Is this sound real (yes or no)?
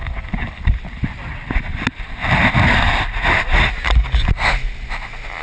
yes